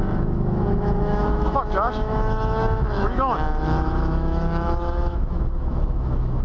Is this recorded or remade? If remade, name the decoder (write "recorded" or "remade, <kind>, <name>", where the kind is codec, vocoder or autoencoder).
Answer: remade, autoencoder, DAC-VAE